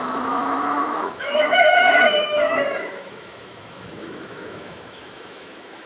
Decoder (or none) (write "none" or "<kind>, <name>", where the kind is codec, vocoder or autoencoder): autoencoder, DAC-VAE